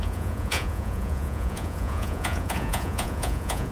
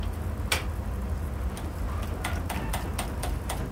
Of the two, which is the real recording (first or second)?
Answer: second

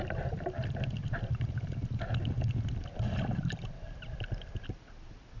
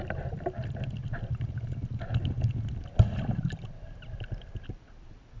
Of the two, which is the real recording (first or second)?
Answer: second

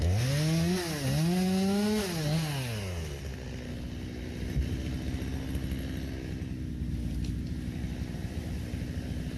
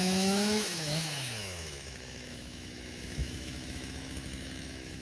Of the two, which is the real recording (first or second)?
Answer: first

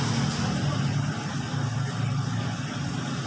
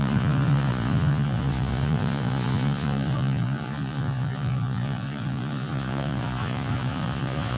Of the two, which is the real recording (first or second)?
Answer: first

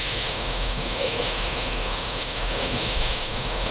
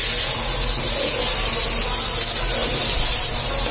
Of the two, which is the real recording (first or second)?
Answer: second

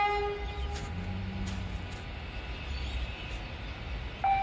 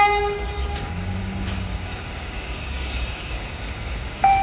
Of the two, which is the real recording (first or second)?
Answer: first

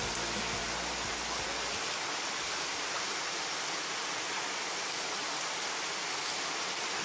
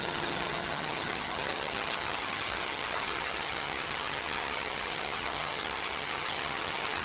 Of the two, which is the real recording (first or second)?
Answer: first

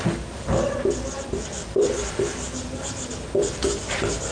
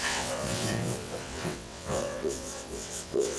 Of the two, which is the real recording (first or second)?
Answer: first